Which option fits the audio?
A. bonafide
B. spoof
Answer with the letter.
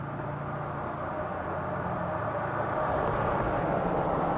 A